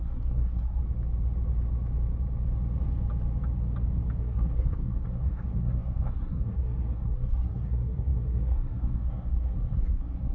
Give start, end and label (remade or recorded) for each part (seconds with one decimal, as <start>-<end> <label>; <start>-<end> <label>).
0.0-0.8 remade; 0.8-4.2 recorded; 4.2-10.3 remade